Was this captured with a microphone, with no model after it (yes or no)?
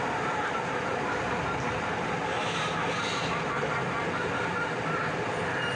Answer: yes